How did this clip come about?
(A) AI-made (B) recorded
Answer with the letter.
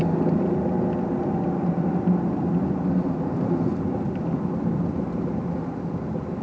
B